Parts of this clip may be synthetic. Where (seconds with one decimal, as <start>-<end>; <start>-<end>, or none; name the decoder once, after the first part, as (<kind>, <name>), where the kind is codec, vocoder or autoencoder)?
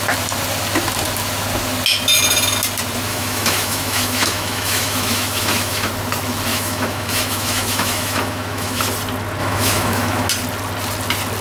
3.1-5.9 (autoencoder, DAC-VAE); 6.5-8.8; 9.4-10.3